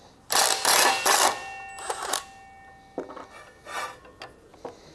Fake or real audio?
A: real